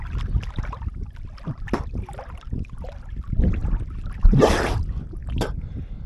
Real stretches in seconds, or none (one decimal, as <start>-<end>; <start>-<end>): 0.0-6.1